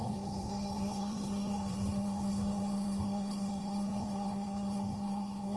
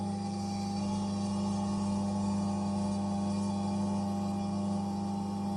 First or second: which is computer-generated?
first